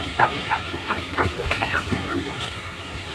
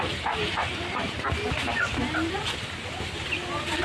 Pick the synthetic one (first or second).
first